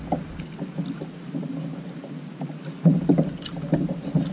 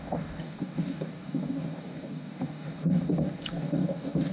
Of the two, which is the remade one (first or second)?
second